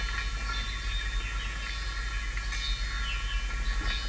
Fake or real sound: real